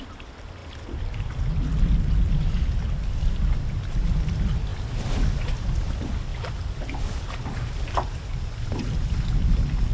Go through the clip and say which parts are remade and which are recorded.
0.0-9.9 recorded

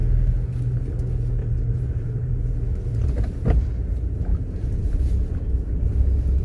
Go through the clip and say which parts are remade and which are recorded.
0.0-1.4 recorded; 1.4-2.3 remade; 2.3-4.3 recorded; 4.3-5.1 remade; 5.1-6.4 recorded